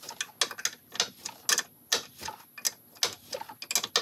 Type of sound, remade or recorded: recorded